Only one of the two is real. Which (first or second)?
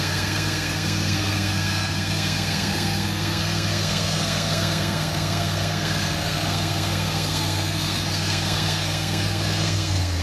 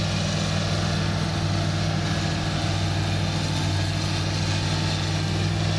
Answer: second